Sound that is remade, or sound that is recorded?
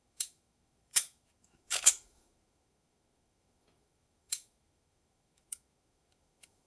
remade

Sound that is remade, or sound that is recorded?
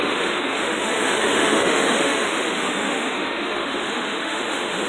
remade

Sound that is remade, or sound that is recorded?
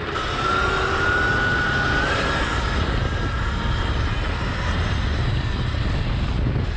recorded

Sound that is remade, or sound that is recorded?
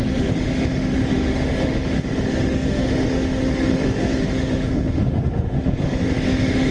remade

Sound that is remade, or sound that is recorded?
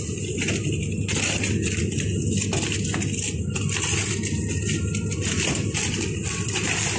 recorded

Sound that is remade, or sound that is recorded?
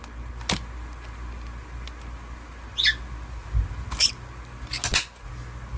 recorded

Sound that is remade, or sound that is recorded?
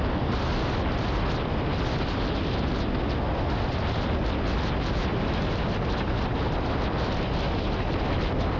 recorded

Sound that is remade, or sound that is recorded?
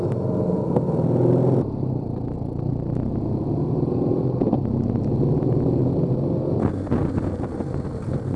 recorded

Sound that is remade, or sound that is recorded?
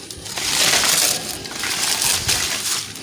recorded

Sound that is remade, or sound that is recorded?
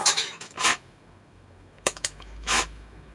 remade